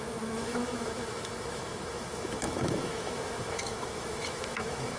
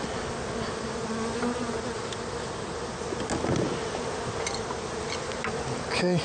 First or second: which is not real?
first